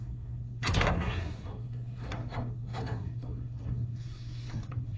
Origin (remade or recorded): remade